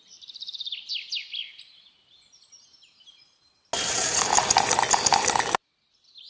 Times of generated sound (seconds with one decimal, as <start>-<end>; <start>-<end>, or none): none

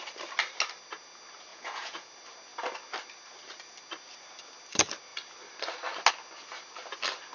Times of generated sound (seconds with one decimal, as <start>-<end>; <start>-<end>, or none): 1.5-2.1

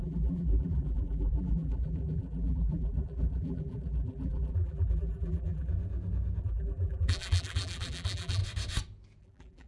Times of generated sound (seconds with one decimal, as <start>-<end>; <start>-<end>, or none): 0.0-5.7; 6.4-8.4; 9.2-9.7

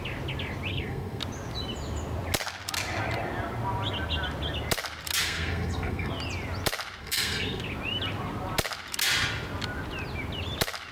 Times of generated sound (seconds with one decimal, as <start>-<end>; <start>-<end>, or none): 0.7-1.2; 5.2-6.1; 7.0-7.6

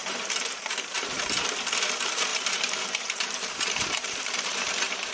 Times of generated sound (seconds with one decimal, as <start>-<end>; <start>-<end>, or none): 0.0-1.4; 2.3-5.1

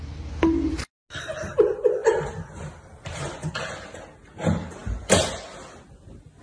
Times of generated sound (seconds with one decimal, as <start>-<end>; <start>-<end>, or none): 2.0-3.5

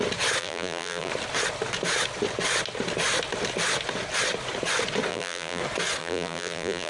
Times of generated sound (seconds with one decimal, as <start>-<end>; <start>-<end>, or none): 0.4-1.1; 5.1-5.6; 6.0-6.9

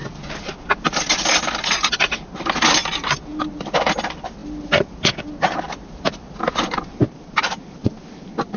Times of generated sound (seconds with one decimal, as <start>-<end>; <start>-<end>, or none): none